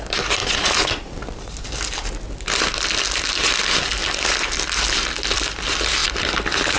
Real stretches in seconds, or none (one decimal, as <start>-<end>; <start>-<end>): 0.0-0.4; 1.3-4.0; 4.9-6.8